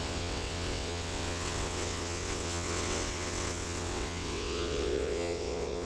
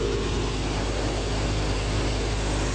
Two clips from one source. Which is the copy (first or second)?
first